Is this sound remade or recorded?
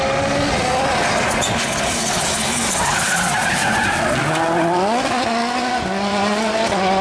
recorded